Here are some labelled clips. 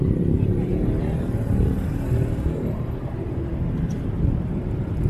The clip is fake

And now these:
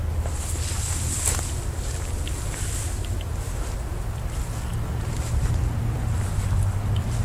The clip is real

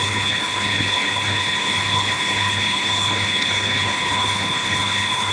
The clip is fake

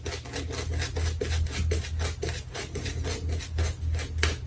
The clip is real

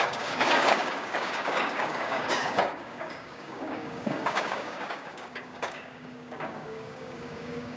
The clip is fake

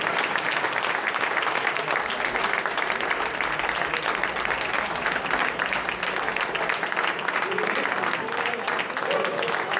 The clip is real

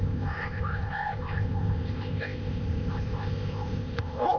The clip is fake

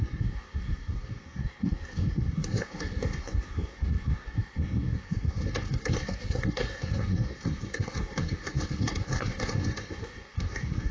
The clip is fake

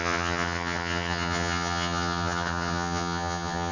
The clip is fake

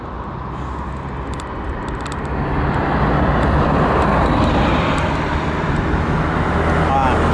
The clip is real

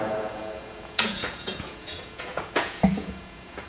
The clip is fake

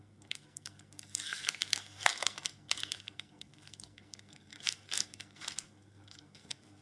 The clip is fake